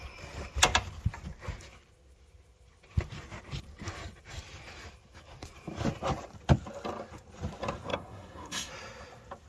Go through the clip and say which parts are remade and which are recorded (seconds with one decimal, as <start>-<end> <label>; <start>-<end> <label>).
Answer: 0.0-7.9 recorded; 7.9-8.7 remade; 8.7-9.5 recorded